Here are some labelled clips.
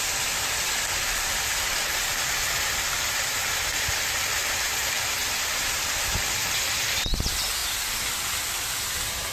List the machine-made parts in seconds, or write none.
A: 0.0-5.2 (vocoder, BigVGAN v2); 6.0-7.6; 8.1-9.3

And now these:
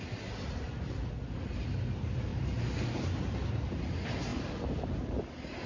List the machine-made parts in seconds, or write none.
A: 2.3-3.7 (vocoder, BigVGAN v2); 4.3-4.9

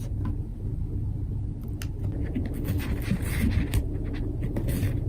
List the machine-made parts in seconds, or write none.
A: none

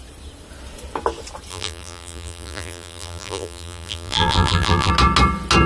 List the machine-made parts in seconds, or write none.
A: 1.5-4.9 (vocoder, BigVGAN v2)

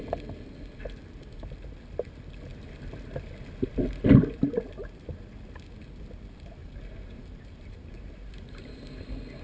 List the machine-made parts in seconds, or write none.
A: 6.6-9.0 (vocoder, BigVGAN v2)

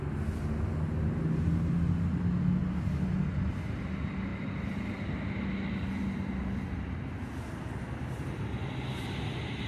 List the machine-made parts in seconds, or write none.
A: none

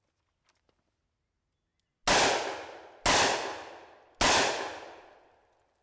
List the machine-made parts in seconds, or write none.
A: none